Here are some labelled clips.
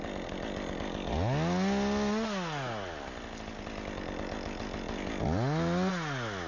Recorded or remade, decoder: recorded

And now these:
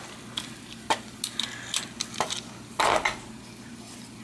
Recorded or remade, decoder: recorded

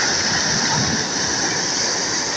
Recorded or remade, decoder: recorded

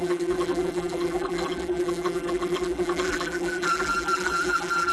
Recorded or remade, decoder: remade, vocoder, BigVGAN v2